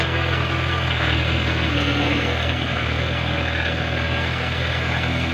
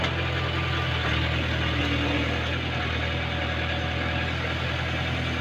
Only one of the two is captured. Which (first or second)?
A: second